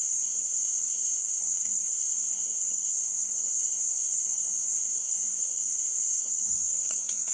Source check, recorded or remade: remade